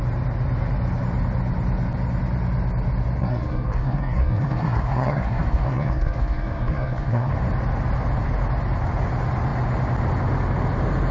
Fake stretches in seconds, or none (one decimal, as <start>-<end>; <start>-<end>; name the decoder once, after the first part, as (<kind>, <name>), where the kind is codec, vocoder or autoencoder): 3.2-7.3 (codec, SNAC)